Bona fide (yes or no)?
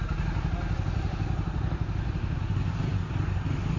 yes